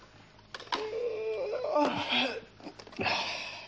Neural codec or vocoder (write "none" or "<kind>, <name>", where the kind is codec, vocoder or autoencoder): none